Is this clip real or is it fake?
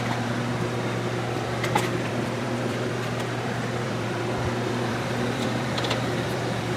fake